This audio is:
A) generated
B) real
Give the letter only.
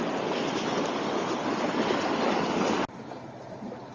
B